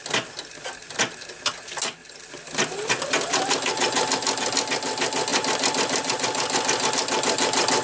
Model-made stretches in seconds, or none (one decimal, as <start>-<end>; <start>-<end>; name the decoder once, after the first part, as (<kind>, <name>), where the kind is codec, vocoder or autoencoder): none